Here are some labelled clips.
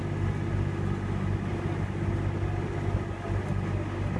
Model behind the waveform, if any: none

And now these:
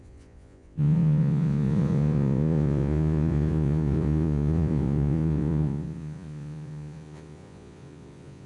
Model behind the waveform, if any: vocoder, Vocos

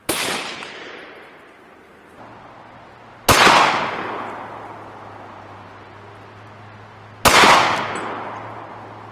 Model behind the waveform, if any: none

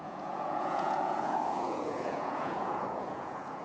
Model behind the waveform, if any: vocoder, Vocos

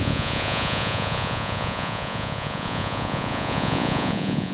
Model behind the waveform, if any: vocoder, Vocos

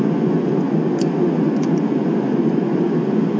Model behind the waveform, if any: vocoder, Vocos